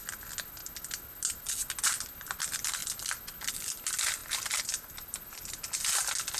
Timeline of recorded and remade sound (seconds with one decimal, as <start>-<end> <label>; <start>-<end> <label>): 0.0-4.2 recorded; 4.2-5.7 remade; 5.7-6.4 recorded